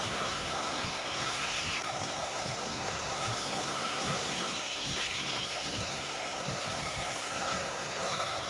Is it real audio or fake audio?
fake